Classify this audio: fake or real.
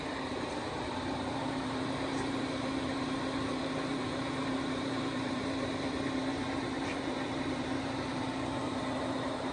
fake